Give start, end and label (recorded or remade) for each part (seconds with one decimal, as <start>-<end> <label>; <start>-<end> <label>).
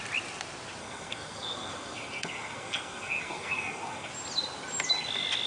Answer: 0.0-0.8 recorded; 0.8-4.1 remade; 4.1-5.5 recorded